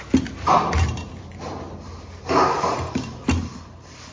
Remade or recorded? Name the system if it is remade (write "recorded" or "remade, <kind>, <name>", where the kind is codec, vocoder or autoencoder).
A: recorded